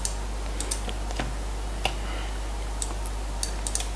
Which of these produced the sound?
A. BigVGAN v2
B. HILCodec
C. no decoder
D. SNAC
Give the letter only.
C